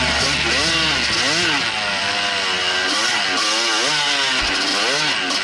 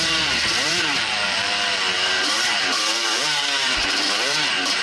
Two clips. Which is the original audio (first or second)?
first